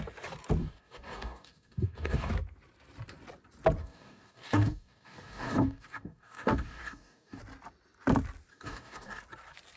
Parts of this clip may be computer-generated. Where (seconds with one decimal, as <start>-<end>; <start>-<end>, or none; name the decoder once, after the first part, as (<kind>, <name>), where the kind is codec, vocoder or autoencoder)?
0.6-2.3 (codec, DAC); 3.8-7.4; 8.5-9.2